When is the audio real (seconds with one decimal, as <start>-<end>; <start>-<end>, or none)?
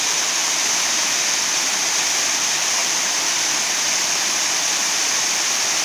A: 0.0-2.8; 4.7-5.8